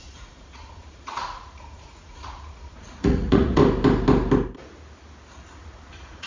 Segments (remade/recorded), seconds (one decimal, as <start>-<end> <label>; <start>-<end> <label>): 0.0-3.6 remade; 3.6-5.6 recorded; 5.6-6.3 remade